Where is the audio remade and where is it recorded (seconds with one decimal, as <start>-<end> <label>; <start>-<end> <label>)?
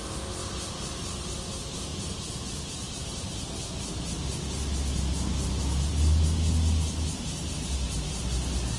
0.0-8.8 recorded